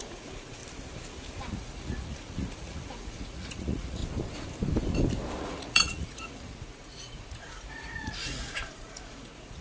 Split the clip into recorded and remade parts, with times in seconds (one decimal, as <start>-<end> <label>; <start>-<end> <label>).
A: 0.0-0.6 remade; 0.6-1.5 recorded; 1.5-4.0 remade; 4.0-5.4 recorded; 5.4-9.6 remade